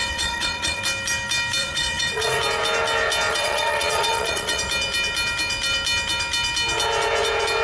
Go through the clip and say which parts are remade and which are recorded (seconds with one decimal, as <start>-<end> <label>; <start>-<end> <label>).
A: 0.0-0.8 remade; 0.8-1.6 recorded; 1.6-2.4 remade; 2.4-3.3 recorded; 3.3-4.6 remade; 4.6-7.6 recorded